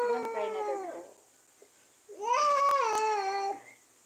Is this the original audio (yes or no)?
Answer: yes